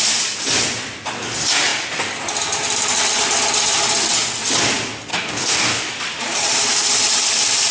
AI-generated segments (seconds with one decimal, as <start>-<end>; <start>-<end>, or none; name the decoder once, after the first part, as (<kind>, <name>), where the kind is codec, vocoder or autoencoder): 5.1-5.9 (codec, DAC)